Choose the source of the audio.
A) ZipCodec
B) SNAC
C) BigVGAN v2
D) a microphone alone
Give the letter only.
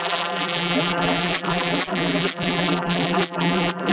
C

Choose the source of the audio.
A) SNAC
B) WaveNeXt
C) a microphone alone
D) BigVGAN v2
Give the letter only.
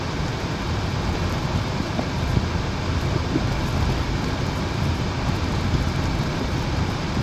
C